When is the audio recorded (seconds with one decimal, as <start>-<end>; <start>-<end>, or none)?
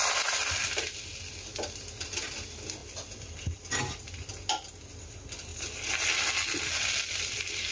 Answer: 0.0-7.7